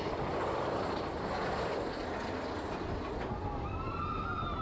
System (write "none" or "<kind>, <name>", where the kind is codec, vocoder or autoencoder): none